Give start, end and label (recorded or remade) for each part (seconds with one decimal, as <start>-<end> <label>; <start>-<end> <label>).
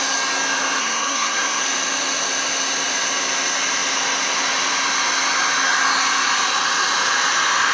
0.0-0.8 recorded; 0.8-1.6 remade; 1.6-7.7 recorded